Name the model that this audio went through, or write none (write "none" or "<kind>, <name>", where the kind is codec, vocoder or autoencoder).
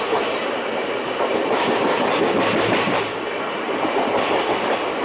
none